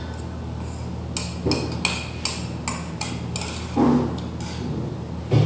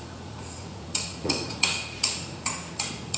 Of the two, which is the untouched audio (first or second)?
first